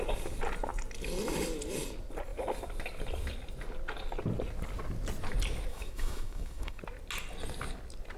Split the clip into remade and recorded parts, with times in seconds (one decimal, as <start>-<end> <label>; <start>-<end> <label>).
0.0-5.7 recorded; 5.7-6.8 remade; 6.8-8.2 recorded